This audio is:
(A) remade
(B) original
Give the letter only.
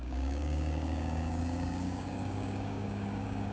A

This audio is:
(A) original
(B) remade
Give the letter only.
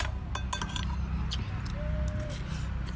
A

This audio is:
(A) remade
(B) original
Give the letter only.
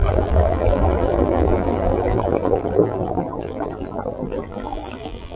A